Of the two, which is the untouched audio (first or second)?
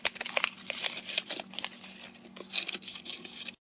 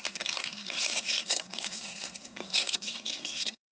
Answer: first